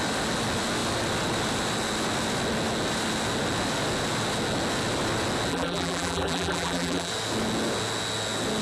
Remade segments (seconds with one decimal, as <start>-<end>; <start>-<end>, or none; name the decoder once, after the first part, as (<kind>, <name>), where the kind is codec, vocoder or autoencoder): 5.5-7.1 (vocoder, BigVGAN v2)